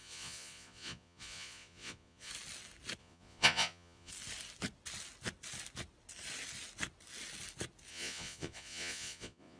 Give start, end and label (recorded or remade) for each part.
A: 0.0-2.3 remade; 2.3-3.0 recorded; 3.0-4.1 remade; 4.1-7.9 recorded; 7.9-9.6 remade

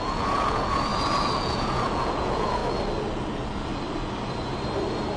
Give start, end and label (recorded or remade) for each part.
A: 0.0-2.6 remade; 2.6-5.2 recorded

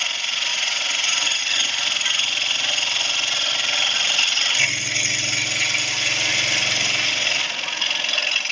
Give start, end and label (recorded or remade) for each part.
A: 0.0-0.5 recorded; 0.5-1.4 remade; 1.4-8.5 recorded

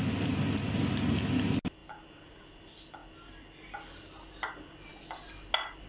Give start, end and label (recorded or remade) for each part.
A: 0.0-5.9 recorded